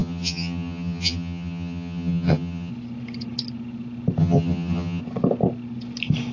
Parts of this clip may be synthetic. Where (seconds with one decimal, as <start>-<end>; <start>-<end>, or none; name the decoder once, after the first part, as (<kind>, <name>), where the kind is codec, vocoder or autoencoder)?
0.0-2.7 (vocoder, HiFi-GAN); 4.2-5.0